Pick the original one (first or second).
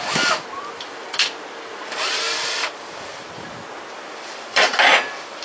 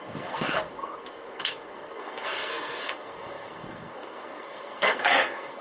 first